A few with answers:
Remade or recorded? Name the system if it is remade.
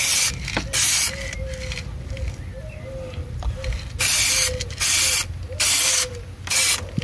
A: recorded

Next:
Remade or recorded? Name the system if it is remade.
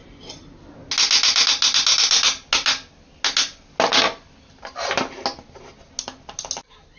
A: recorded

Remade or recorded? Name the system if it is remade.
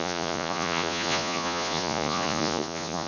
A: remade, vocoder, Vocos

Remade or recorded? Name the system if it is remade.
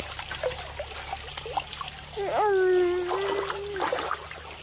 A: recorded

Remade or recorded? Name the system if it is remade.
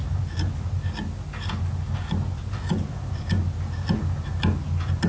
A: recorded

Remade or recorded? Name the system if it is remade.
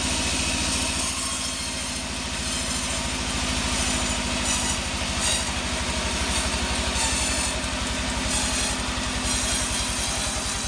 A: recorded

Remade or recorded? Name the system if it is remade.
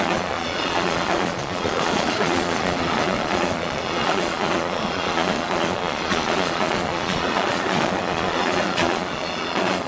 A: remade, vocoder, Vocos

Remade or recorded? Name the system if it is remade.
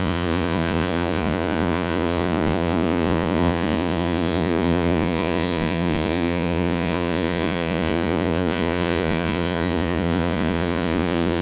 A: remade, vocoder, Vocos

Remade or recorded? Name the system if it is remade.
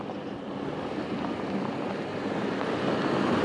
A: recorded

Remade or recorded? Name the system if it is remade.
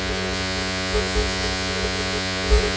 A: remade, vocoder, Vocos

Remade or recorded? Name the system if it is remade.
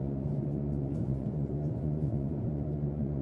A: remade, vocoder, Vocos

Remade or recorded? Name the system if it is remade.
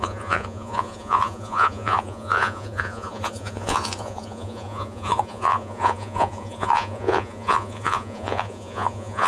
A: remade, vocoder, Vocos